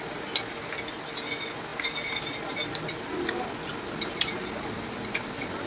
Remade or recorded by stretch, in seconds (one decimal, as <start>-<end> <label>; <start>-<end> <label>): 0.0-1.7 recorded; 1.7-2.5 remade; 2.5-5.7 recorded